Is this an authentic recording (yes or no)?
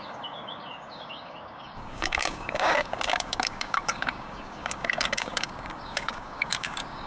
no